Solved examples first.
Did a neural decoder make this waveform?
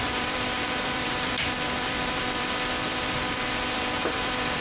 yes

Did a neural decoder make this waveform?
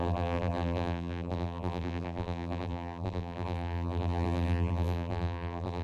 yes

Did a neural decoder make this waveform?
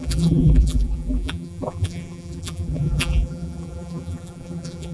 yes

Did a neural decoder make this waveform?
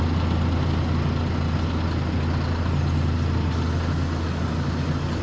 no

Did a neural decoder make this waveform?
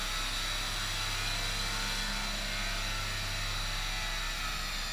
no